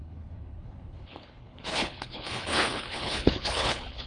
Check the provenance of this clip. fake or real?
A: fake